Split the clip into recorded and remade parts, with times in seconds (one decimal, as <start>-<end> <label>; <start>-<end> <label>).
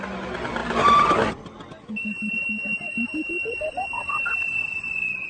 0.0-5.3 recorded